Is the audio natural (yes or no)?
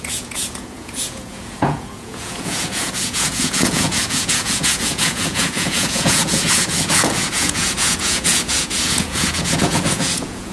no